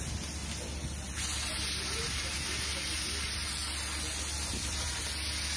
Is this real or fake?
real